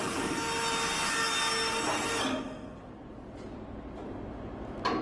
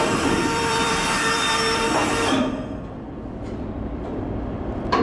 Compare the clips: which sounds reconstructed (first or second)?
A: second